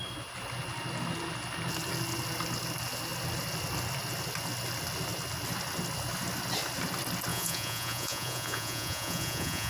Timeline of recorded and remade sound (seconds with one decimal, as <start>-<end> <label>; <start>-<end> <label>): 0.0-7.3 recorded; 7.3-9.7 remade